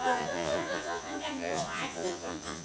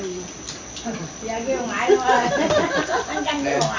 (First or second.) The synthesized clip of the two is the first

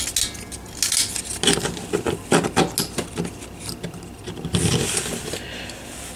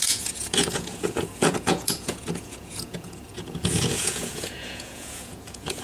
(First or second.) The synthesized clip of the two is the second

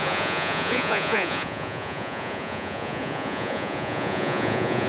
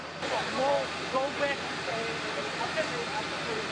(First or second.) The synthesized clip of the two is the first